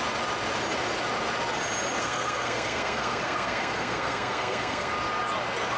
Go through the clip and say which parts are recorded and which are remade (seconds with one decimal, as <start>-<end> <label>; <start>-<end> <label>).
0.0-2.0 recorded; 2.0-4.9 remade; 4.9-5.8 recorded